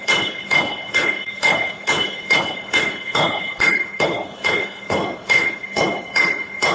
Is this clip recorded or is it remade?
remade